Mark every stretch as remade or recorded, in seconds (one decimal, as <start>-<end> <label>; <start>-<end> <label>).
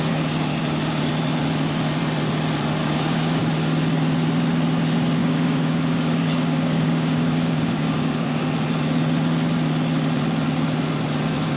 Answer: 0.0-2.8 recorded; 2.8-3.4 remade; 3.4-5.2 recorded; 5.2-8.4 remade; 8.4-11.6 recorded